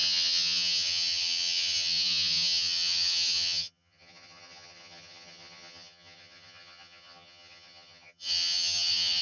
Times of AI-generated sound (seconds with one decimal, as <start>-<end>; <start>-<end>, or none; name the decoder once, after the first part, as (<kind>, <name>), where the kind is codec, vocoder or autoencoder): 0.0-9.2 (vocoder, HiFi-GAN)